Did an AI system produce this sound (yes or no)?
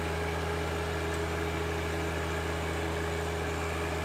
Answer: no